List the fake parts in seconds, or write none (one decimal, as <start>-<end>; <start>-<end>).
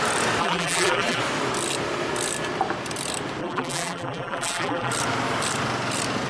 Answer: 0.4-1.2; 3.4-4.9